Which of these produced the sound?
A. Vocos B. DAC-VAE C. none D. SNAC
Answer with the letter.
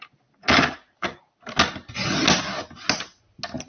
C